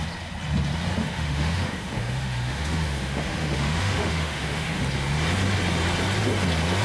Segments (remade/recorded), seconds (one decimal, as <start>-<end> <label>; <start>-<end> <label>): 0.0-1.0 recorded; 1.0-4.8 remade; 4.8-6.8 recorded